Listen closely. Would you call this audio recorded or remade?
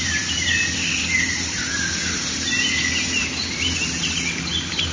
recorded